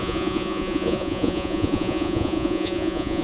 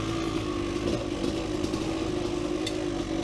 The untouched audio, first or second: second